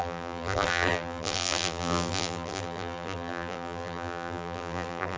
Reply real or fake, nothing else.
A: fake